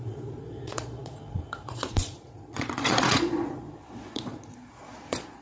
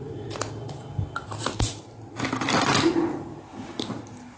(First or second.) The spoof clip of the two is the first